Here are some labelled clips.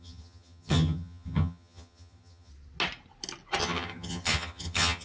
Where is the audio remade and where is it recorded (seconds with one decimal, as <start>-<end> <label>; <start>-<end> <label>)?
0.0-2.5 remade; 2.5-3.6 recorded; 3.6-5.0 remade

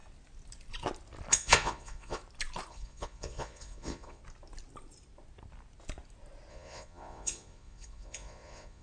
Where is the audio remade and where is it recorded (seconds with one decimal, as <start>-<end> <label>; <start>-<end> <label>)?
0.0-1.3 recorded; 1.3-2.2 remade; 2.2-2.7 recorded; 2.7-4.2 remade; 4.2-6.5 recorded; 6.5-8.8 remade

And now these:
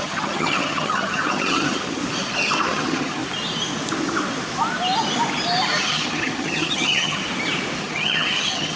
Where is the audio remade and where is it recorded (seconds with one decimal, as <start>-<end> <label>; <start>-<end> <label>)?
0.0-2.0 remade; 2.0-2.6 recorded; 2.6-3.2 remade; 3.2-5.8 recorded; 5.8-7.2 remade; 7.2-7.8 recorded; 7.8-8.8 remade

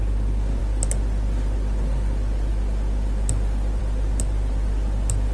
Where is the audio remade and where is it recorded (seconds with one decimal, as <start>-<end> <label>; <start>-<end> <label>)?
0.0-5.3 recorded

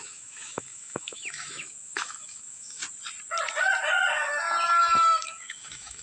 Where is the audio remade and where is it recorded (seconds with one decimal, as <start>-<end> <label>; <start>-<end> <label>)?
0.0-2.8 remade; 2.8-4.8 recorded; 4.8-6.0 remade

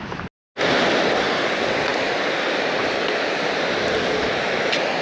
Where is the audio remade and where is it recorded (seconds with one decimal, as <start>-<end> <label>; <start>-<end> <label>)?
0.0-5.0 recorded

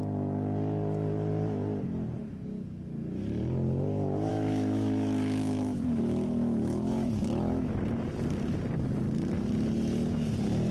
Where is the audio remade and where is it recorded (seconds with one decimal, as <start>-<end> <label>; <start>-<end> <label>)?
0.0-4.3 recorded; 4.3-7.8 remade; 7.8-10.7 recorded